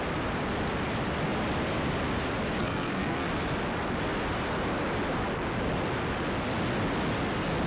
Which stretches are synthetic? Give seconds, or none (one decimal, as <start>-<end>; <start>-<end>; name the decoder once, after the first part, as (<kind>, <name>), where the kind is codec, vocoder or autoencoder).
2.6-3.3 (codec, SNAC)